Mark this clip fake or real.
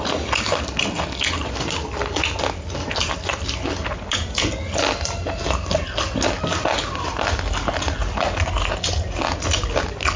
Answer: real